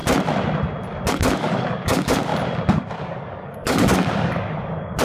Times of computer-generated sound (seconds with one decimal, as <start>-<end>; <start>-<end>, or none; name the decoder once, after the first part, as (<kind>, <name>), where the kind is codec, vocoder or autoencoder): 1.1-2.3 (codec, DAC); 3.0-5.0